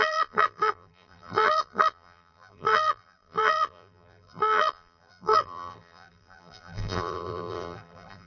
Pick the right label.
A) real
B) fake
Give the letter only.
B